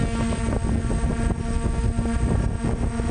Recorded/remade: recorded